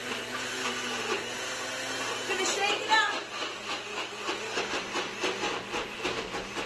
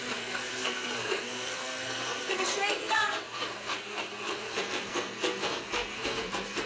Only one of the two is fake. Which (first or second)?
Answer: second